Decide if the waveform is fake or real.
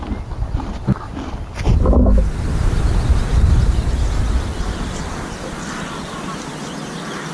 real